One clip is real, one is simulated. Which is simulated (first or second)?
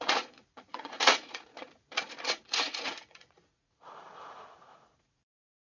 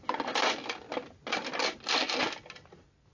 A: first